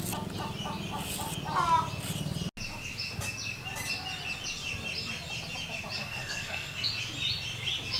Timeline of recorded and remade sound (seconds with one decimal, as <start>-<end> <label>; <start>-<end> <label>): 0.0-6.0 recorded; 6.0-6.9 remade; 6.9-8.0 recorded